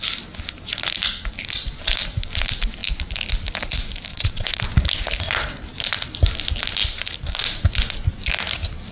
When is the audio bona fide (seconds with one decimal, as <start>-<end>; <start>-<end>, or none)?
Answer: 0.0-4.1; 4.6-8.9